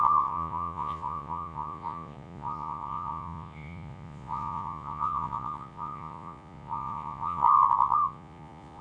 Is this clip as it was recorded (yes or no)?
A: no